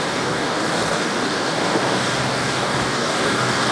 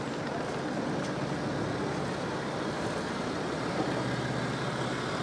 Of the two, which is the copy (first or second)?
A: first